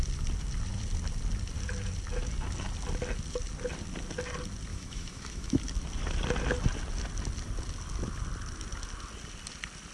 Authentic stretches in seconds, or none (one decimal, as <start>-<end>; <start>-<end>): 0.0-4.7; 5.6-9.9

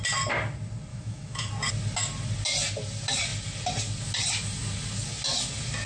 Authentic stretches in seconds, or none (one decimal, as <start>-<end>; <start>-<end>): 0.0-0.9; 1.5-5.9

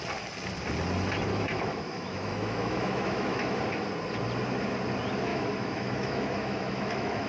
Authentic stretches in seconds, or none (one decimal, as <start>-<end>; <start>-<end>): 0.0-1.3; 3.6-5.3

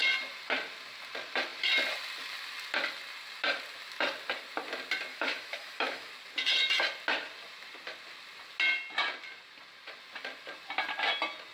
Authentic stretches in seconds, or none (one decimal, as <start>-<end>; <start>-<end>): 0.0-5.1; 6.1-11.5

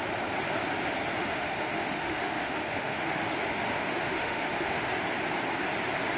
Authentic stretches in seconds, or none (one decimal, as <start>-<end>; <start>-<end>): 0.0-1.2; 4.9-6.2

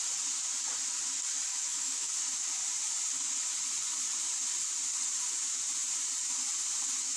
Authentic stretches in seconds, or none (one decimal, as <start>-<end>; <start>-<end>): 0.0-1.5; 2.1-7.2

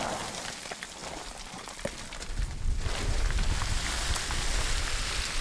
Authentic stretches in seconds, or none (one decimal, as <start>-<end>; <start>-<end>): 0.0-5.4

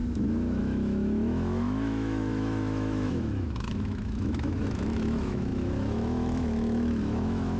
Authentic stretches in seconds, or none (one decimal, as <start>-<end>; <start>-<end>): none